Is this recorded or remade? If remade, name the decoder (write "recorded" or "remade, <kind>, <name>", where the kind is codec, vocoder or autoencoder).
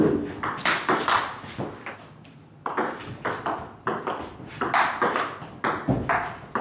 recorded